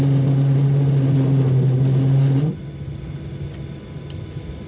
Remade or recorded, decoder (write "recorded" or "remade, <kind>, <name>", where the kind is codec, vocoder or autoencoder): recorded